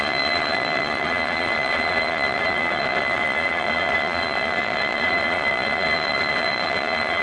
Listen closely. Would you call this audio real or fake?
fake